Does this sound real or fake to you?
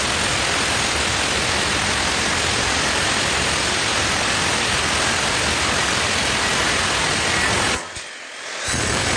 real